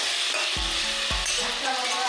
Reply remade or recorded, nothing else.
recorded